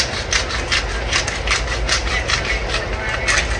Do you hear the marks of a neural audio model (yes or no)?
no